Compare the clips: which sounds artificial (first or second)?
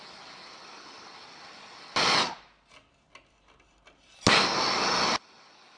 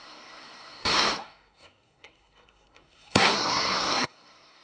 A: second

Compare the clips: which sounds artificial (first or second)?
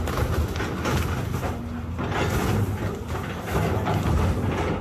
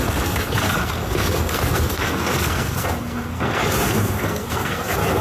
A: second